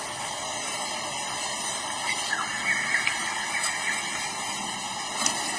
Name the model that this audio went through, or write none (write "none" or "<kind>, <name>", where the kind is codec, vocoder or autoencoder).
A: none